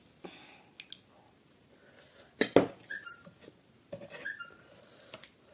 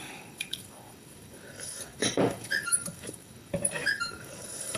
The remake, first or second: second